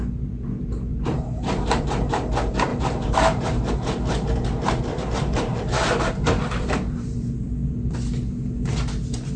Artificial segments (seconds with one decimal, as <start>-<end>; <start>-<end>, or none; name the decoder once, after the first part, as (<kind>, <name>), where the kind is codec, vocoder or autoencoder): 0.9-1.8 (vocoder, BigVGAN v2); 2.7-3.7; 4.9-7.7

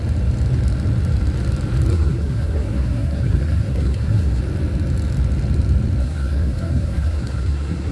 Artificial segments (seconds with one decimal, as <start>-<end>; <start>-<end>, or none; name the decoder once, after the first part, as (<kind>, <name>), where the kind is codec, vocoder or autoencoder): 1.9-4.4 (codec, SNAC); 6.0-7.9

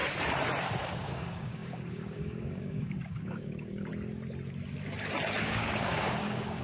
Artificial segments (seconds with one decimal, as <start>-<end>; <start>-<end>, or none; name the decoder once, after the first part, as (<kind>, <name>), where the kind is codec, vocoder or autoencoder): 0.8-3.9 (codec, DAC); 5.4-6.6

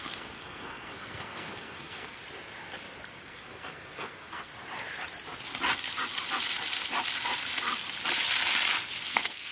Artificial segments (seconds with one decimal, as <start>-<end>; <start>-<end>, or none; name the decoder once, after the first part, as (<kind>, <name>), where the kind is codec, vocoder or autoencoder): 0.0-2.2 (codec, SNAC); 3.2-4.5; 9.1-9.5